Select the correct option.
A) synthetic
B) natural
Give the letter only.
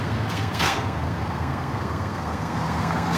A